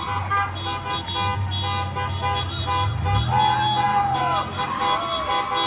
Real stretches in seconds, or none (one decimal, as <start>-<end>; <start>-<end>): 0.0-3.9; 4.6-5.7